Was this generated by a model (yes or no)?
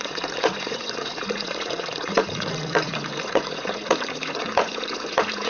yes